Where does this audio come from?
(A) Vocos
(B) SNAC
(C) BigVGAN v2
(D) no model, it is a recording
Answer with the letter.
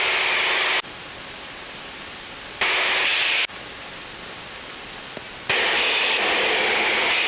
D